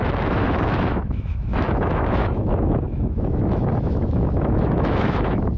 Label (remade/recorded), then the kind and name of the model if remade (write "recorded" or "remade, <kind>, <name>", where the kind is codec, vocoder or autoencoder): remade, autoencoder, DAC-VAE